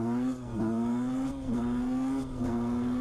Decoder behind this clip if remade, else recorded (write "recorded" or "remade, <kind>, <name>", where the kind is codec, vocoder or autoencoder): remade, codec, SNAC